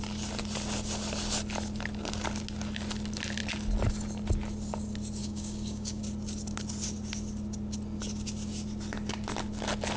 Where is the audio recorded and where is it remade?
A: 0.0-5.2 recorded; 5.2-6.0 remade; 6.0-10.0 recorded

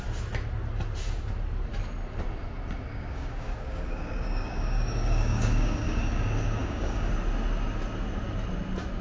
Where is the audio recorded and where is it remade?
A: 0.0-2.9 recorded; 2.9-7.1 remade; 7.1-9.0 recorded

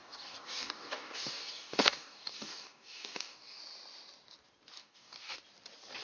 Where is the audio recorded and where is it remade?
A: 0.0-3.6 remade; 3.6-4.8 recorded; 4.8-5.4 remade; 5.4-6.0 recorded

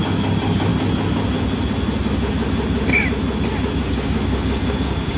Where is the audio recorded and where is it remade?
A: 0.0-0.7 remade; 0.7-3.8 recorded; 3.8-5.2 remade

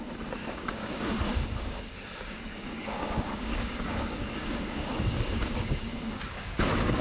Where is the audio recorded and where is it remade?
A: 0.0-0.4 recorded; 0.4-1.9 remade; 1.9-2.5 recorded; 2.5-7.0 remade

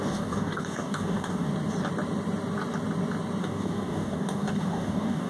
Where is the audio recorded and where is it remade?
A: 0.0-1.5 remade; 1.5-3.4 recorded; 3.4-5.3 remade